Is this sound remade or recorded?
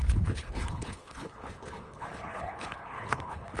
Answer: remade